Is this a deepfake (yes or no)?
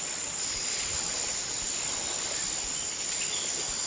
no